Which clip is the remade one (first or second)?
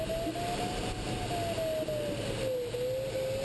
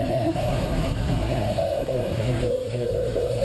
second